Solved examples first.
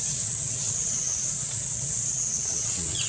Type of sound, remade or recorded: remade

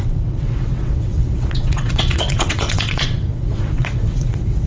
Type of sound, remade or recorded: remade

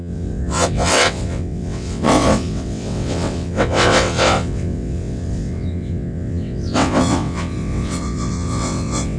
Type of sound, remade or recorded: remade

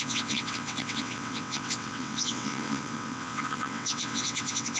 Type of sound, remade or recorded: remade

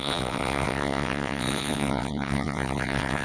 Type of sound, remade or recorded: remade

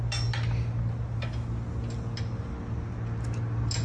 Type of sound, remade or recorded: recorded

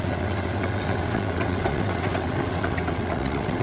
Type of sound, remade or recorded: remade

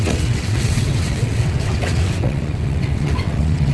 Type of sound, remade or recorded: remade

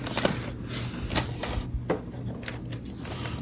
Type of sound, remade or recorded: recorded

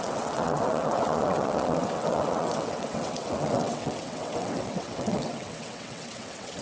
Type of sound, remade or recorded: remade